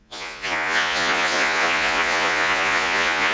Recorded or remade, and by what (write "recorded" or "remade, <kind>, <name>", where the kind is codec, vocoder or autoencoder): remade, vocoder, Vocos